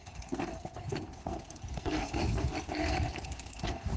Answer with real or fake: fake